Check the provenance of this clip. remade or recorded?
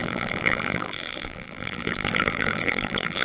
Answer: remade